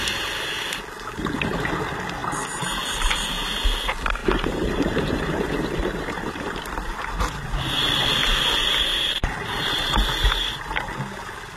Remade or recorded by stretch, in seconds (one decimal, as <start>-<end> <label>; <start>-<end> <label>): 0.0-4.2 recorded; 4.2-6.6 remade; 6.6-8.9 recorded; 8.9-10.8 remade; 10.8-11.6 recorded